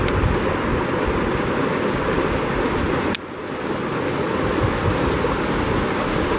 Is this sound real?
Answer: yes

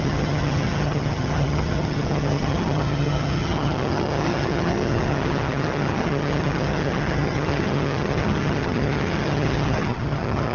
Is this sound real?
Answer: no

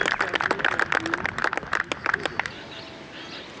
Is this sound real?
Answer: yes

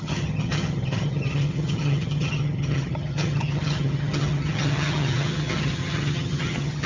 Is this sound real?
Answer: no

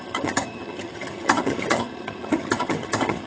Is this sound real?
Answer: no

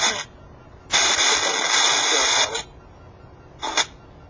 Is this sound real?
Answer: yes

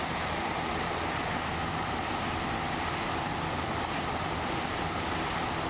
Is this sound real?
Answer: yes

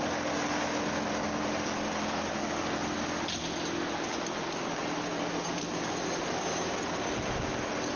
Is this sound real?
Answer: yes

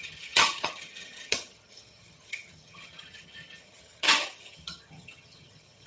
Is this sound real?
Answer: no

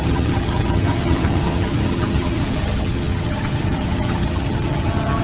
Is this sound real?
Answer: no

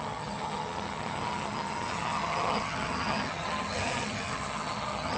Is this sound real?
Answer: no